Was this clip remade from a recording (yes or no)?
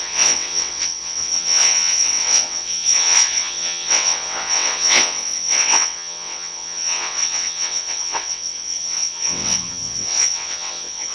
yes